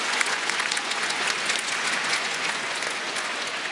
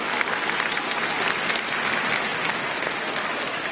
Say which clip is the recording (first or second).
second